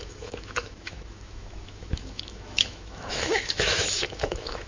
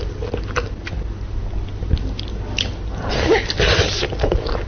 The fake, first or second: first